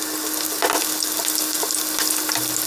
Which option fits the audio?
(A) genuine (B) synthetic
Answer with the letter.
A